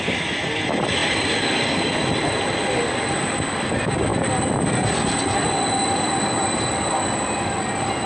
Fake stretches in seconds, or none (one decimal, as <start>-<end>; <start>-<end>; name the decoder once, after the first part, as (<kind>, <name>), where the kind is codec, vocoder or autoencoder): none